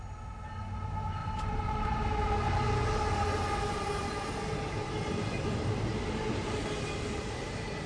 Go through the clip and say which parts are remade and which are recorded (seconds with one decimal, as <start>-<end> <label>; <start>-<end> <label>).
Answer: 0.0-7.9 recorded